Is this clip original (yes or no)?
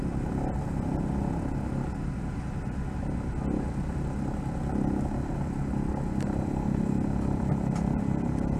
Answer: yes